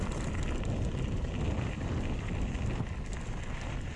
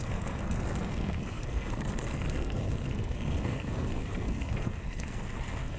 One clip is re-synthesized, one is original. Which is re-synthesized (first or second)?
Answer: second